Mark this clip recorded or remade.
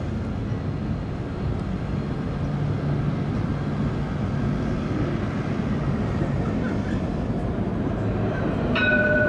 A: recorded